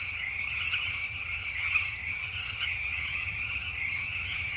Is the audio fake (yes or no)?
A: yes